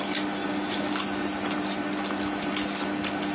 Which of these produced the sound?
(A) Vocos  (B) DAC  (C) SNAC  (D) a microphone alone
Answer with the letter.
D